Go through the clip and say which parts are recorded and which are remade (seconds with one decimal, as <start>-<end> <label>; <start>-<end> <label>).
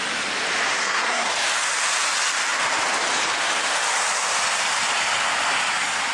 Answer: 0.0-0.8 recorded; 0.8-1.3 remade; 1.3-6.1 recorded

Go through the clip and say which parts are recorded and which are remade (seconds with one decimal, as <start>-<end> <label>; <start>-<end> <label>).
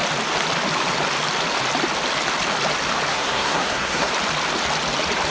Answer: 0.0-3.1 recorded; 3.1-4.1 remade; 4.1-5.3 recorded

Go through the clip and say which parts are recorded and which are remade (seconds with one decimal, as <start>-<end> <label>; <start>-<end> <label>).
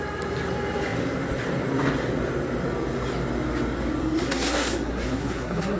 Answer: 0.0-4.0 recorded; 4.0-5.8 remade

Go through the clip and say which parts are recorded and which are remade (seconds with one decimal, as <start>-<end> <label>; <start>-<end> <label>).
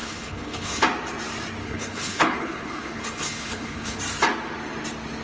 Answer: 0.0-0.8 remade; 0.8-1.6 recorded; 1.6-4.0 remade; 4.0-5.2 recorded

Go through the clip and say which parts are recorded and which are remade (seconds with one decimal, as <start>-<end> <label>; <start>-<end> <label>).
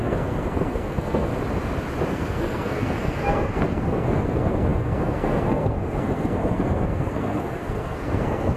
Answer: 0.0-1.3 remade; 1.3-2.1 recorded; 2.1-8.6 remade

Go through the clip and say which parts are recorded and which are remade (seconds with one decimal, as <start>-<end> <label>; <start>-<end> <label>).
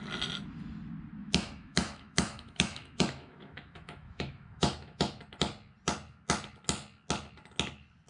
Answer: 0.0-1.2 recorded; 1.2-5.2 remade; 5.2-8.1 recorded